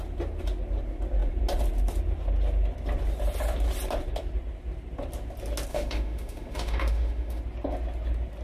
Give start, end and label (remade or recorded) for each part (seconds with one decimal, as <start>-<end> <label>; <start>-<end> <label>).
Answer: 0.0-5.7 recorded; 5.7-7.4 remade; 7.4-8.4 recorded